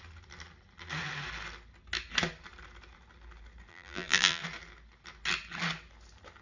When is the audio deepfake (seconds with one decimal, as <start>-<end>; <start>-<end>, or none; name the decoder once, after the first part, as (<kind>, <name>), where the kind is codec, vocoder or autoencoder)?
3.7-4.4 (vocoder, BigVGAN v2)